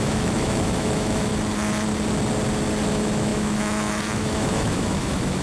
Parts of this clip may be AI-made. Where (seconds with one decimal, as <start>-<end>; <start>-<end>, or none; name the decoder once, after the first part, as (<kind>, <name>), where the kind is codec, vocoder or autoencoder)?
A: 0.0-1.3 (autoencoder, DAC-VAE); 2.9-5.4